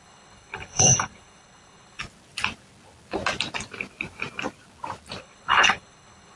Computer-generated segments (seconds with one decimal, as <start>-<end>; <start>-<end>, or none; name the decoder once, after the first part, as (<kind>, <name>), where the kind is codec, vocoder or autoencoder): 0.0-2.0 (codec, HILCodec); 5.2-6.4